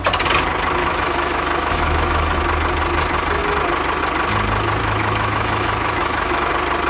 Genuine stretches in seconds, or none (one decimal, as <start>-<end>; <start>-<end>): 0.0-0.8; 2.4-4.8; 6.5-6.9